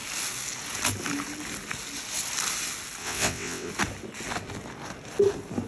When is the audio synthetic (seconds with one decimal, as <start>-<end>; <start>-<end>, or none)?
3.0-3.7